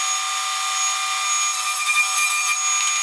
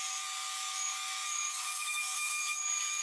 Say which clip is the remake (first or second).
second